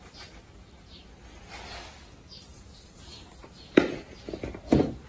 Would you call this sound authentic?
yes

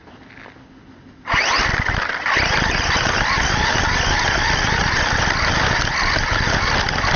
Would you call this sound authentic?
yes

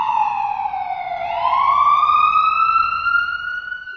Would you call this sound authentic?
yes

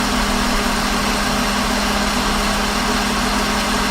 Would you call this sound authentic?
yes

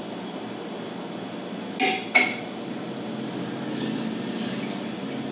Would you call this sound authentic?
yes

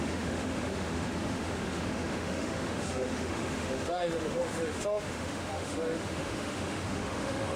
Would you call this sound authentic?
no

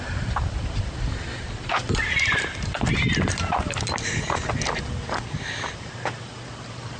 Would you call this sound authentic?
yes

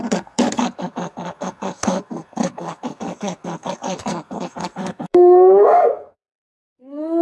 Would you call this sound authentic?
no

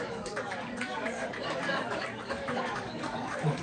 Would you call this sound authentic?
no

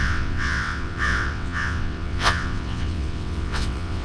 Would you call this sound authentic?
no